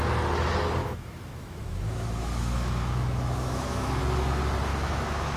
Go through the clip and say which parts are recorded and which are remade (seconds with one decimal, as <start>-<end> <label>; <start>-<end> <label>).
0.0-0.8 recorded; 0.8-4.0 remade; 4.0-4.7 recorded; 4.7-5.4 remade